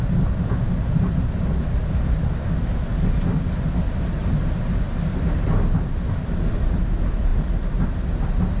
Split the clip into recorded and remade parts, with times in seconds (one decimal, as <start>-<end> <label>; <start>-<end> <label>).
0.0-8.6 recorded